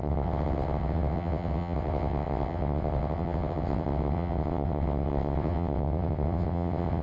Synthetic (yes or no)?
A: yes